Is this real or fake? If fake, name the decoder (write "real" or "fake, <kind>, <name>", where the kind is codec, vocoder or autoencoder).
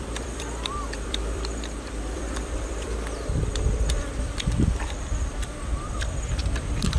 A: fake, vocoder, BigVGAN v2